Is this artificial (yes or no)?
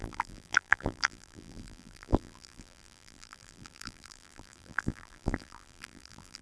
yes